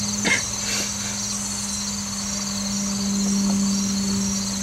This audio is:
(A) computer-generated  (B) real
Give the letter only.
B